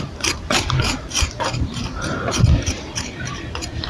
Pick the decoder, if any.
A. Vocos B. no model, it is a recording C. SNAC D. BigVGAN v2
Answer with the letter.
D